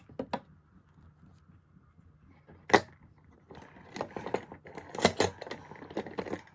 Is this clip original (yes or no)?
yes